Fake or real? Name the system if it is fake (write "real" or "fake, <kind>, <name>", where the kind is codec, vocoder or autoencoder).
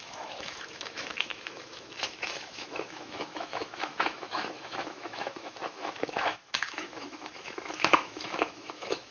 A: fake, autoencoder, DAC-VAE